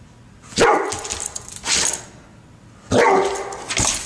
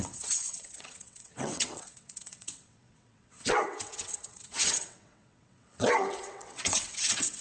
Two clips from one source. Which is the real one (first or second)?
first